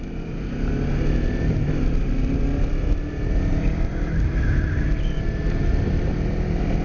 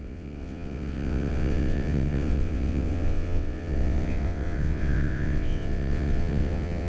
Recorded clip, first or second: first